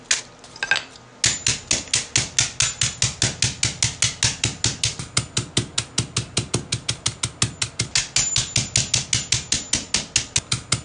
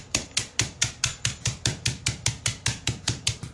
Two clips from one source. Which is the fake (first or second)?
second